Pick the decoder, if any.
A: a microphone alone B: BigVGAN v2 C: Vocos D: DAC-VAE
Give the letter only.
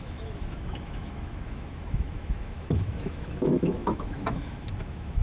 D